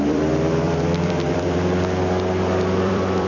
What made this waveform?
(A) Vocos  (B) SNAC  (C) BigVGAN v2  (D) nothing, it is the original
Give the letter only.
C